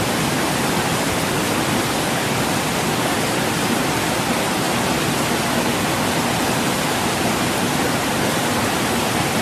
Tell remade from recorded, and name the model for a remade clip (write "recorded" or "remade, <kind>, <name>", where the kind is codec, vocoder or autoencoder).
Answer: recorded